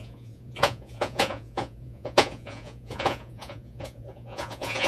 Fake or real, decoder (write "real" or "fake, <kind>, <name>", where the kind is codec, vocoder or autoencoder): fake, vocoder, Vocos